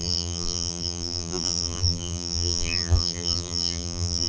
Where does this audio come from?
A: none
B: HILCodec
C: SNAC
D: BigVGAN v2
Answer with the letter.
D